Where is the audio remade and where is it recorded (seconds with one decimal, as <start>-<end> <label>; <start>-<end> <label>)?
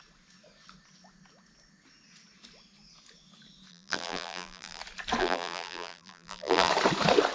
0.0-3.7 recorded; 3.7-4.8 remade; 4.8-5.2 recorded; 5.2-6.7 remade; 6.7-7.3 recorded